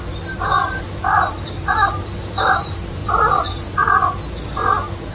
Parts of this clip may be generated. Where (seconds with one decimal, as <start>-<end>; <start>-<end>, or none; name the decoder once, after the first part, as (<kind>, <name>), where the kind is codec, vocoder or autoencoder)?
0.0-3.0 (vocoder, BigVGAN v2)